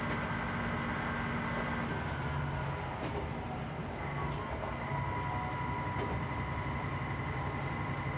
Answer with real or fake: real